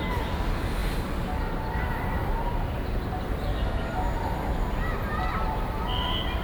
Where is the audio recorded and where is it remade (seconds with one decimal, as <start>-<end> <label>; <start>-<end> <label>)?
0.0-0.8 recorded; 0.8-4.6 remade; 4.6-5.3 recorded; 5.3-6.4 remade